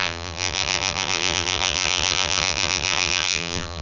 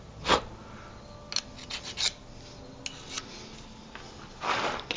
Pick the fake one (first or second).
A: first